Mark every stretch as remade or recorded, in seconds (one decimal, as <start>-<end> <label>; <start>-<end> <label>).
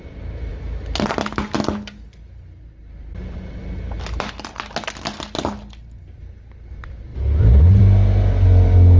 0.0-7.1 recorded; 7.1-7.8 remade; 7.8-9.0 recorded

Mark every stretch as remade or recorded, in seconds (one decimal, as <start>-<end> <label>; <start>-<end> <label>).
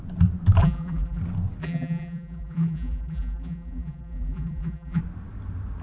0.0-0.6 recorded; 0.6-1.2 remade; 1.2-1.6 recorded; 1.6-5.0 remade; 5.0-5.8 recorded